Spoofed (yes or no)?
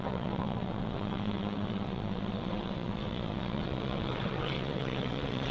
yes